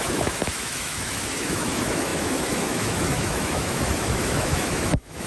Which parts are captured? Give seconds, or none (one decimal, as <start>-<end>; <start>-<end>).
none

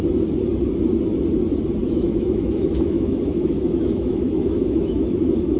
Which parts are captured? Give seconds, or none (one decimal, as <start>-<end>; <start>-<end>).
0.0-1.8

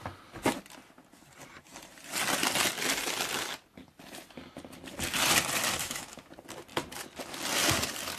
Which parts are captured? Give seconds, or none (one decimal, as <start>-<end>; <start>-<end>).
0.0-5.8; 6.3-8.2

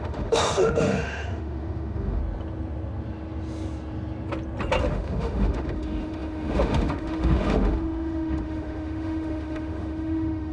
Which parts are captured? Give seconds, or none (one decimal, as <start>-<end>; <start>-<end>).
2.2-4.8